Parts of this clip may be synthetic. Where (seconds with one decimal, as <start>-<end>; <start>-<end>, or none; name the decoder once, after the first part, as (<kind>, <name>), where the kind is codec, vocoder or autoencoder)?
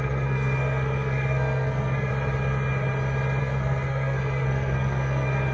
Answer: 0.0-2.1 (codec, SNAC); 3.4-5.5